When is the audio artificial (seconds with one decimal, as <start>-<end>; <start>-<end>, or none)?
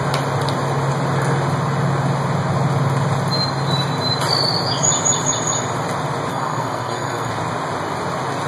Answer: 6.3-7.3